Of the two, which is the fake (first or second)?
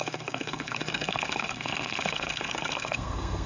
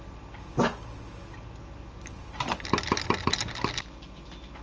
first